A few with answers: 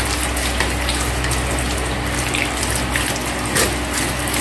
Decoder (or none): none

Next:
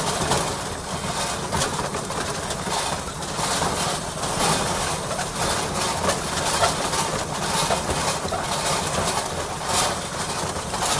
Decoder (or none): none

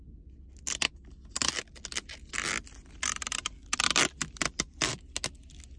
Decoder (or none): none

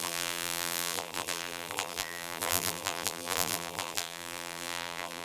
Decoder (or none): vocoder, BigVGAN v2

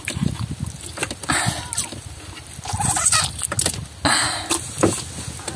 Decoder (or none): none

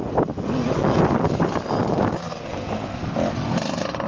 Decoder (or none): none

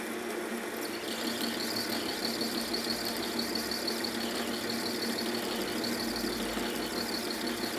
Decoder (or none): none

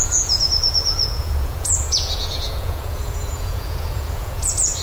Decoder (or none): vocoder, Vocos